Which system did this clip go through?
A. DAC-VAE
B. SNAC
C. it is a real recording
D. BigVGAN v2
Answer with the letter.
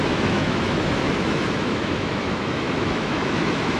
A